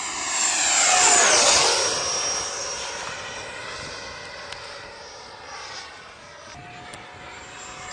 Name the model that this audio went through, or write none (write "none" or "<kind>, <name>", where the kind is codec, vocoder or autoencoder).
none